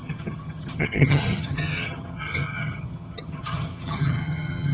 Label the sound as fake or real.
fake